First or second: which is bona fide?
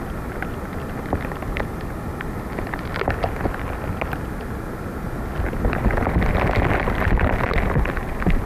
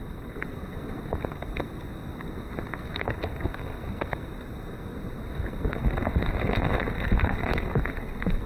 first